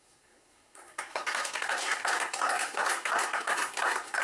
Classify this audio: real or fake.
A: fake